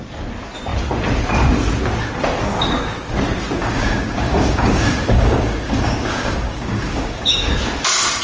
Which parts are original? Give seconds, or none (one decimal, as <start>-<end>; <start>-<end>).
0.0-3.6; 7.5-8.2